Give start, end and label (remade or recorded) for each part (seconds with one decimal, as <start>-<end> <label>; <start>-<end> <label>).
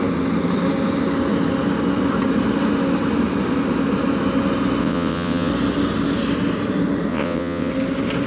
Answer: 0.0-4.8 recorded; 4.8-5.5 remade; 5.5-7.1 recorded; 7.1-7.7 remade; 7.7-8.3 recorded